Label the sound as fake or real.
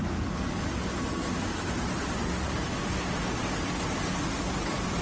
real